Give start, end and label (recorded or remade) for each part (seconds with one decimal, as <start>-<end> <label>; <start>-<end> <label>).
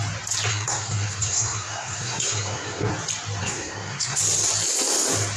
0.0-0.5 recorded; 0.5-2.9 remade; 2.9-3.4 recorded; 3.4-4.2 remade; 4.2-5.4 recorded